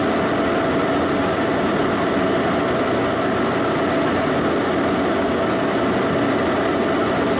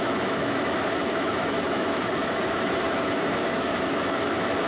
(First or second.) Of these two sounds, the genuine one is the first